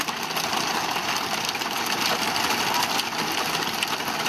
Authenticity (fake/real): real